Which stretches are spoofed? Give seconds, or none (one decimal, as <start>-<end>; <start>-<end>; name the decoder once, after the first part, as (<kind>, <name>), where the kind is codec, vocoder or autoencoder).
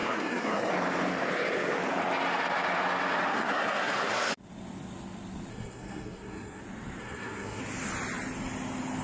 0.0-0.7 (codec, SNAC); 3.3-4.3; 5.5-6.6; 7.0-7.6